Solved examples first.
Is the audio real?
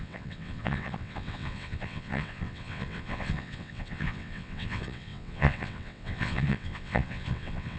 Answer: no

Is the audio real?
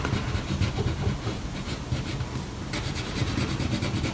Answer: yes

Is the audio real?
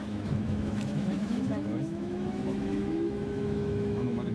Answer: no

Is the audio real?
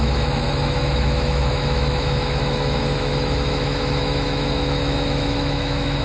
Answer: no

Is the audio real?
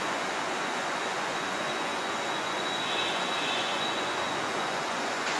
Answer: no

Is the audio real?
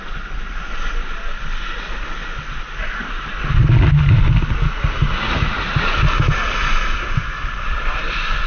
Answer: yes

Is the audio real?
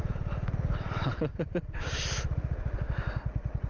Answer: yes